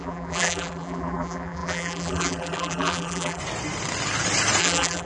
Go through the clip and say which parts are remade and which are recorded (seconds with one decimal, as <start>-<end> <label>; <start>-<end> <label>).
0.0-3.4 remade; 3.4-4.6 recorded; 4.6-5.1 remade

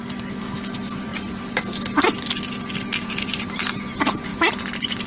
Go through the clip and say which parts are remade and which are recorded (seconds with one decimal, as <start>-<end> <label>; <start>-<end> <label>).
0.0-5.1 recorded

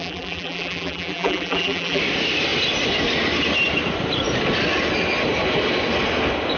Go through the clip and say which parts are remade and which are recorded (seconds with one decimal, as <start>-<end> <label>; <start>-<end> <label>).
0.0-2.0 remade; 2.0-6.6 recorded